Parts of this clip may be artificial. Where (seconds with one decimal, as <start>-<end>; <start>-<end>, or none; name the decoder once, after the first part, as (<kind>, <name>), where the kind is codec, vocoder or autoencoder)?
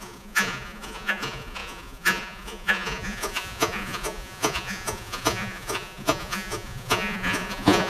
0.0-7.9 (vocoder, Vocos)